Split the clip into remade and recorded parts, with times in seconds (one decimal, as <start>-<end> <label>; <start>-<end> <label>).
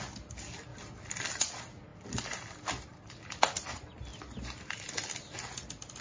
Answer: 0.0-6.0 recorded